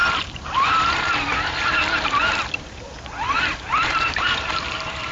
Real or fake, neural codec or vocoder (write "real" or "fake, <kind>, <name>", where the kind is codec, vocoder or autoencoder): fake, vocoder, BigVGAN v2